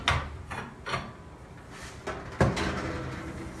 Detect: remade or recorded recorded